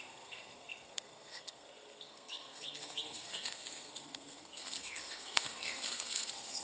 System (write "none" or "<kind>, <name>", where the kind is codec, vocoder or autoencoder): codec, SNAC